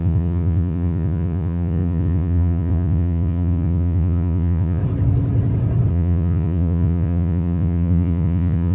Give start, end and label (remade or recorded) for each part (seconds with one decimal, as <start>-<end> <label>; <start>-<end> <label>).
0.0-4.8 remade; 4.8-5.9 recorded; 5.9-8.7 remade